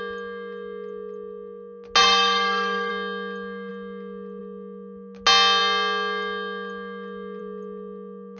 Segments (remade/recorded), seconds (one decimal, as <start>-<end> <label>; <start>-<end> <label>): 0.0-2.0 recorded; 2.0-2.9 remade; 2.9-8.4 recorded